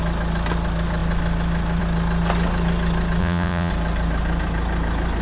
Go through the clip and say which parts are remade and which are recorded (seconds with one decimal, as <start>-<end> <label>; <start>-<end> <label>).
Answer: 0.0-3.2 recorded; 3.2-3.7 remade; 3.7-5.2 recorded